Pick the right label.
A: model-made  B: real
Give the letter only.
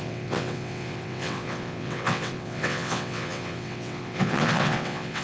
A